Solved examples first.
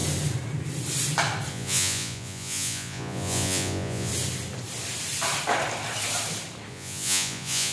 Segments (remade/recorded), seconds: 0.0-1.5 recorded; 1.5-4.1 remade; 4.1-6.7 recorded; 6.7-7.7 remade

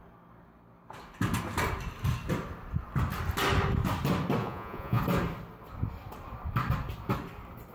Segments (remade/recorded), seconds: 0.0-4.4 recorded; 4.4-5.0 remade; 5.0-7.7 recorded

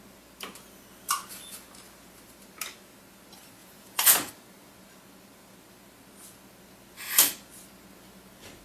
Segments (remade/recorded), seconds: 0.0-3.6 recorded; 3.6-4.3 remade; 4.3-8.6 recorded

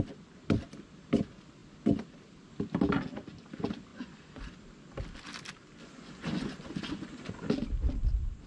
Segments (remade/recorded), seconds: 0.0-3.9 recorded; 3.9-4.5 remade; 4.5-5.8 recorded; 5.8-7.5 remade; 7.5-8.5 recorded

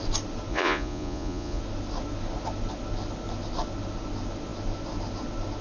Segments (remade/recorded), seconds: 0.0-0.5 recorded; 0.5-1.6 remade; 1.6-5.6 recorded

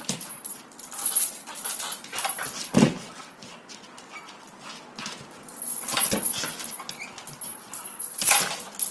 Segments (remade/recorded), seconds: 0.0-8.9 recorded